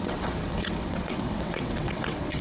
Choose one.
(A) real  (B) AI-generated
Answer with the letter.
B